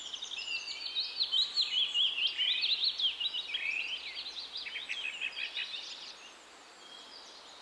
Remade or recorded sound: recorded